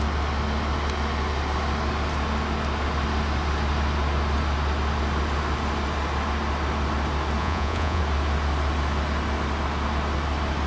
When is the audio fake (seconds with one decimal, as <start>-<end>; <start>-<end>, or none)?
7.4-8.0